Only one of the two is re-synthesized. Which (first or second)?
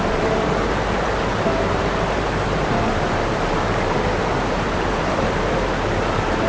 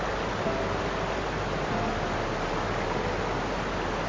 first